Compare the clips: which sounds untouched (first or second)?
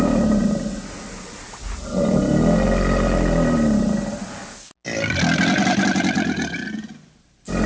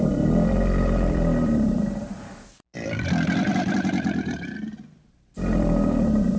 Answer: first